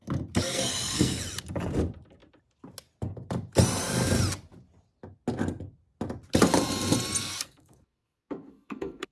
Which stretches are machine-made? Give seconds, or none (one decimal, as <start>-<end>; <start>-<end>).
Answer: 0.4-1.2; 7.2-9.1